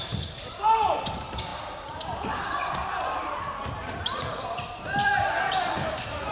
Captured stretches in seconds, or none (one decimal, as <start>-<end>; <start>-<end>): 0.0-3.8; 5.1-6.3